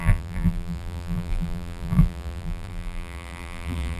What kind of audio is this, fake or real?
fake